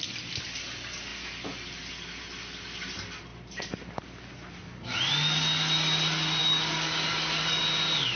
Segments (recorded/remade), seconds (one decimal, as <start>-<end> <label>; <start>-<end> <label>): 0.0-6.4 recorded; 6.4-7.6 remade; 7.6-8.2 recorded